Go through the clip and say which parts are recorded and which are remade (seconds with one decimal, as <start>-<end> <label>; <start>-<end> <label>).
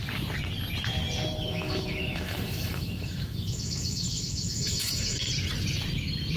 0.0-1.5 recorded; 1.5-5.3 remade; 5.3-6.4 recorded